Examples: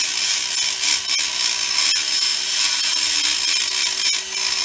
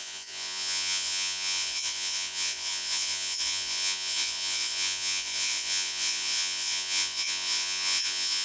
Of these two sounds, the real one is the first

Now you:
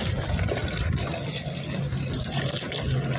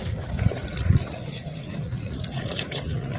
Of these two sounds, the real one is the first